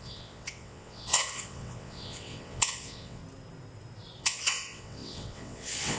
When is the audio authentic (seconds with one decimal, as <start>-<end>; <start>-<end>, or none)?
3.2-4.2